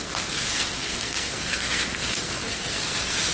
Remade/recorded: remade